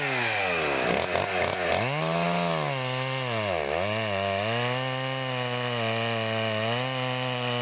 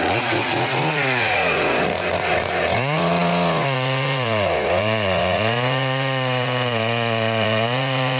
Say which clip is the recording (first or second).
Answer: first